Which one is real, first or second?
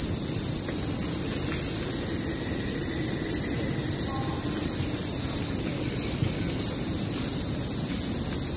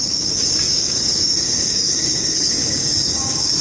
first